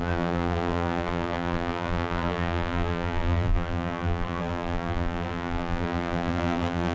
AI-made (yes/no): yes